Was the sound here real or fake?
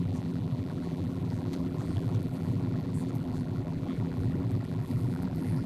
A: fake